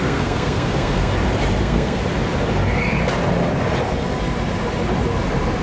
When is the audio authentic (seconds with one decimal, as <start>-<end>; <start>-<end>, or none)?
1.1-1.6; 2.0-5.6

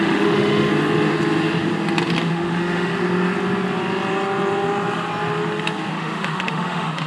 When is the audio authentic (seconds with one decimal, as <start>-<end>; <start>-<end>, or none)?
0.7-2.3; 2.9-5.9

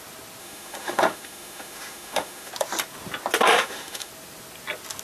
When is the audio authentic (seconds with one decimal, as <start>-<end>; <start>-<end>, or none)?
0.0-0.4; 2.5-3.5; 4.1-5.0

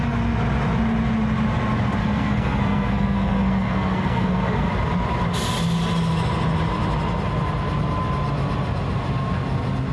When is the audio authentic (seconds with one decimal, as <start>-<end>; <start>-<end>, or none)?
0.0-2.0; 4.7-9.9

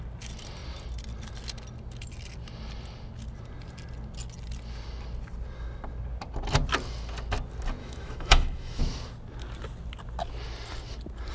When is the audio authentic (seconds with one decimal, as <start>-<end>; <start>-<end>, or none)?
0.0-7.8; 8.8-11.3

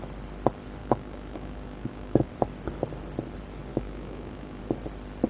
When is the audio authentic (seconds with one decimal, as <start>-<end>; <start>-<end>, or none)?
0.0-0.8; 2.3-3.7; 4.6-5.3

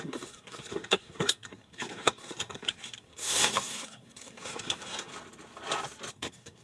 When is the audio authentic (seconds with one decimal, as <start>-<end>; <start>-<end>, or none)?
5.1-6.1

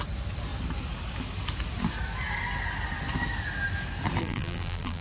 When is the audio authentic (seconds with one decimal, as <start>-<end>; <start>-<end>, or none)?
0.0-4.2